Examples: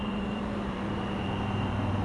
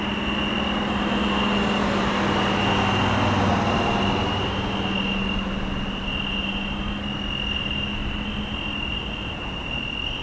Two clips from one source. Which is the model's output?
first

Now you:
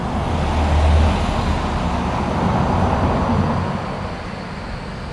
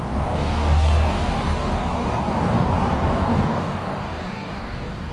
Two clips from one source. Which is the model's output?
second